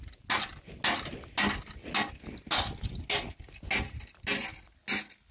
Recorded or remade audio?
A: recorded